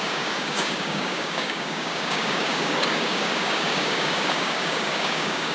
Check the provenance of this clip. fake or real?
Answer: fake